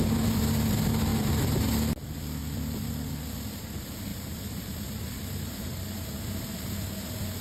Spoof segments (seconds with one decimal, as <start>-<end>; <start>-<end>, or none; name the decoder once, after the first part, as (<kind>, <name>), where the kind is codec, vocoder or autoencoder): 1.1-1.7 (vocoder, BigVGAN v2); 2.4-3.2; 4.1-6.2